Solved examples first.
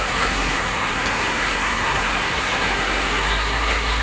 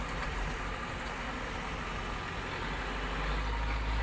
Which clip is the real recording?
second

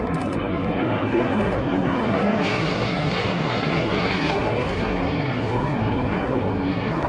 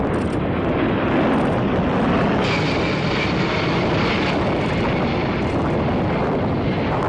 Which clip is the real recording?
second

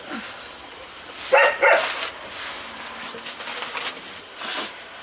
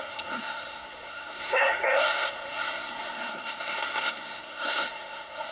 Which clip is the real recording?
first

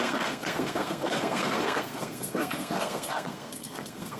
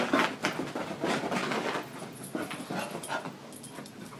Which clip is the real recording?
second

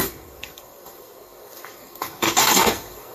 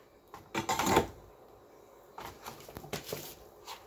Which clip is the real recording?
second